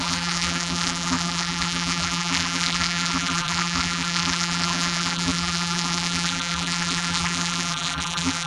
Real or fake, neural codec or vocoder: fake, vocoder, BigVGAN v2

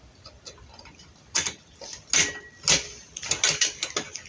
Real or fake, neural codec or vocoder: real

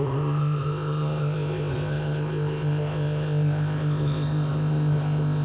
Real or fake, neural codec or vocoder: fake, codec, ZipCodec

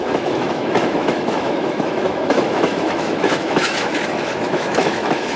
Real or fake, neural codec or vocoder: fake, autoencoder, DAC-VAE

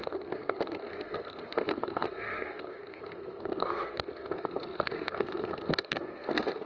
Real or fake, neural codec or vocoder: fake, codec, SNAC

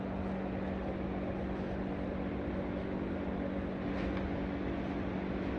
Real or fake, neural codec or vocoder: real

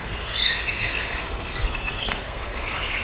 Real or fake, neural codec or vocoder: fake, codec, SNAC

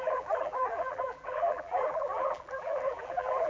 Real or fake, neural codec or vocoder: fake, vocoder, BigVGAN v2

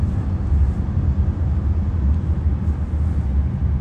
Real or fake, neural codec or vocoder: real